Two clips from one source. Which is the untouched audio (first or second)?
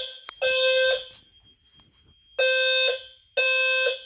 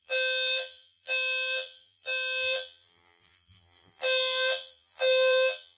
first